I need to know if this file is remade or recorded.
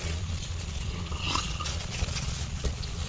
remade